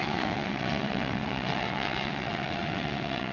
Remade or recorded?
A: remade